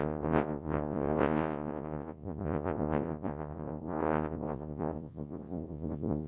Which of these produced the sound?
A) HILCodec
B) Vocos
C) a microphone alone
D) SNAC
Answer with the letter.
B